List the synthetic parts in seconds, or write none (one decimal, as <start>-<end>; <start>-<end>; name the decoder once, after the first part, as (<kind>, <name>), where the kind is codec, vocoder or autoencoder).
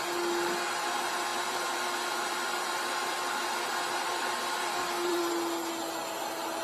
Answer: 1.3-5.3 (vocoder, BigVGAN v2)